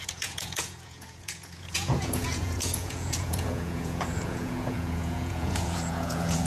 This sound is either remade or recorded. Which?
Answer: remade